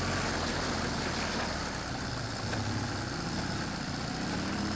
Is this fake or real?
real